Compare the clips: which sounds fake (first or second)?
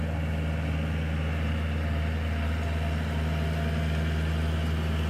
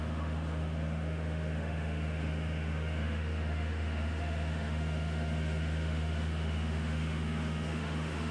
second